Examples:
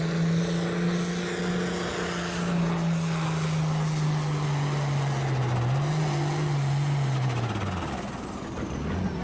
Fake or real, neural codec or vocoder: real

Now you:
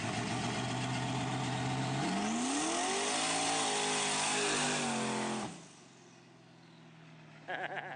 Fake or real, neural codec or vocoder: real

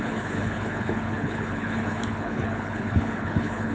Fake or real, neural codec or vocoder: fake, codec, HILCodec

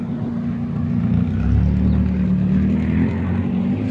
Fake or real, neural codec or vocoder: real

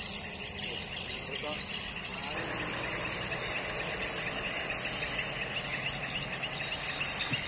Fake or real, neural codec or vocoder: real